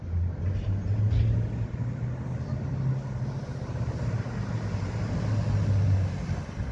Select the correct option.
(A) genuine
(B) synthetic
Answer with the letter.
A